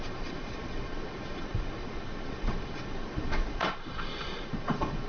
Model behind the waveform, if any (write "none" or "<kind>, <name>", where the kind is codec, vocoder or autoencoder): vocoder, Vocos